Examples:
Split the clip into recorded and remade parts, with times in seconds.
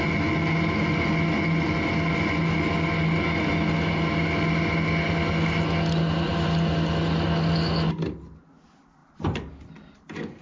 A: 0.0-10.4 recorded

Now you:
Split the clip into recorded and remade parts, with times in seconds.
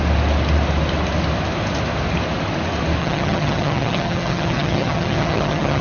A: 0.0-3.0 recorded; 3.0-5.8 remade